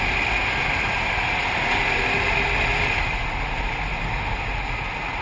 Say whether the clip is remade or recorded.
recorded